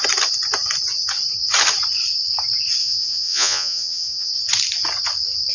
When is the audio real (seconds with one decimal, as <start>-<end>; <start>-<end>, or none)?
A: 0.0-2.8; 4.3-5.5